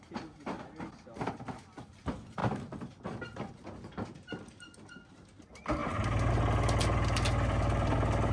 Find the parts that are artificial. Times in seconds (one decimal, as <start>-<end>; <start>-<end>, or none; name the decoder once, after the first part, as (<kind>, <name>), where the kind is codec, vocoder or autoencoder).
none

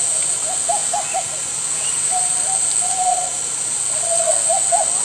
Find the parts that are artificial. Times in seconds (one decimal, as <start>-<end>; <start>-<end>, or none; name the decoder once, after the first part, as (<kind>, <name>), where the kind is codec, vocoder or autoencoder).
none

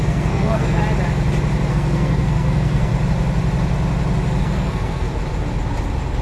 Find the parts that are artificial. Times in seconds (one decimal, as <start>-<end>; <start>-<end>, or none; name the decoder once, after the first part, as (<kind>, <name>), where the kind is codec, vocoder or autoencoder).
0.0-0.8 (codec, SNAC); 1.7-2.9; 4.4-5.1

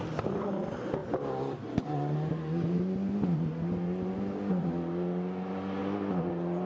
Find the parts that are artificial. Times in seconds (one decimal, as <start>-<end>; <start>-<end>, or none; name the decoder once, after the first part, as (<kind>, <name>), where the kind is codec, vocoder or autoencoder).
none

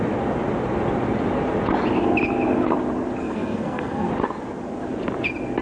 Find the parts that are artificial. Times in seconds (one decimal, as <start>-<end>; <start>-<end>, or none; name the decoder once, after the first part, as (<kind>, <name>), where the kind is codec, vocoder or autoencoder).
3.2-4.1 (codec, SNAC)

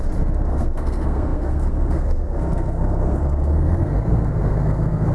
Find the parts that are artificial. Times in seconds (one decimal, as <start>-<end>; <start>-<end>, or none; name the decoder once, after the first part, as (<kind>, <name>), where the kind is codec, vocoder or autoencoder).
0.5-5.1 (codec, SNAC)